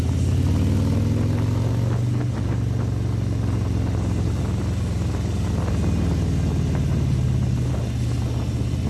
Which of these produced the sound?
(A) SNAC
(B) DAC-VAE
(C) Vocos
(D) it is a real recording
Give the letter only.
D